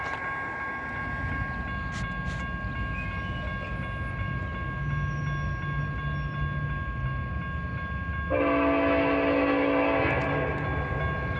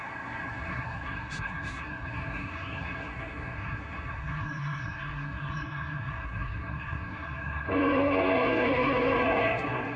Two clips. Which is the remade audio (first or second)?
second